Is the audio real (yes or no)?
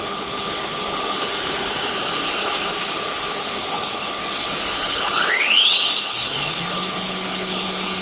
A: no